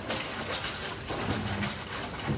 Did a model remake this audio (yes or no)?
no